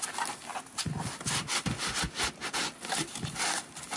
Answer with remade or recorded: recorded